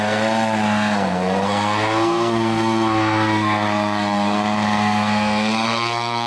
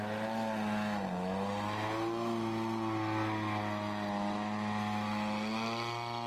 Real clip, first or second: second